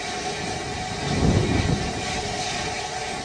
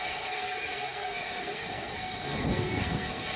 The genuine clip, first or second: first